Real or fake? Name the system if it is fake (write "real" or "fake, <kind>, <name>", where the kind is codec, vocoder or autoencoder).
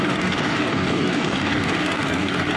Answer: fake, codec, DAC